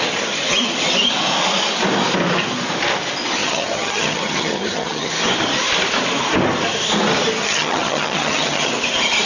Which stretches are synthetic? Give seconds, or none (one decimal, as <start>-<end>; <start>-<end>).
3.4-5.1; 7.4-8.7

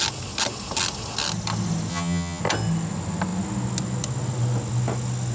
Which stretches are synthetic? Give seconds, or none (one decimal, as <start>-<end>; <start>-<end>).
1.9-2.4

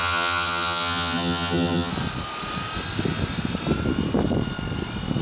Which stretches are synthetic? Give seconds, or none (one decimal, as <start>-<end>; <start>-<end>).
0.0-1.9

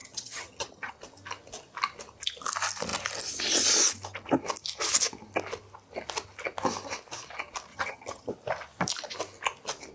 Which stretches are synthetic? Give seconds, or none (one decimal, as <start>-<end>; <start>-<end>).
0.0-0.9; 7.7-8.3

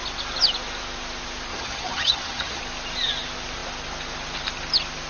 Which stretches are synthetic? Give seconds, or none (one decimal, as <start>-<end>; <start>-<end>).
1.5-2.6

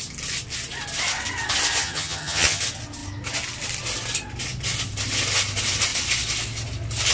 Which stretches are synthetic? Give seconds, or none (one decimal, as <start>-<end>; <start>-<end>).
1.8-2.6